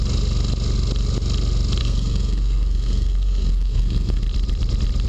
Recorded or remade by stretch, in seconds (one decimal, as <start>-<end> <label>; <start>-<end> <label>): 0.0-1.8 recorded; 1.8-4.2 remade; 4.2-5.1 recorded